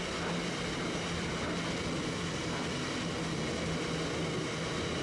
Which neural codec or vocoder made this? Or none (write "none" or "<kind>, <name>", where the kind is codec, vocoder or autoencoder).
none